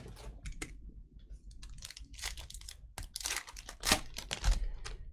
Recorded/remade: recorded